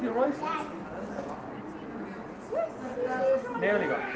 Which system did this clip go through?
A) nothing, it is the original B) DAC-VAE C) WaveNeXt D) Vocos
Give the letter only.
A